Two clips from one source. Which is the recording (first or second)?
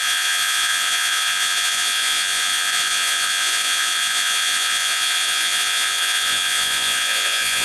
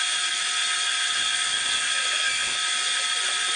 second